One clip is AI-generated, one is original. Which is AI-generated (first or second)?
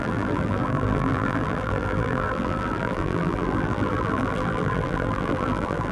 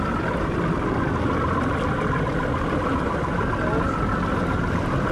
first